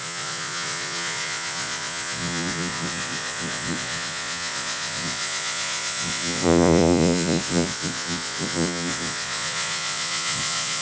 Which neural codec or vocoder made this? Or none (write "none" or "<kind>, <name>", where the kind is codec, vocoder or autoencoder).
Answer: vocoder, Vocos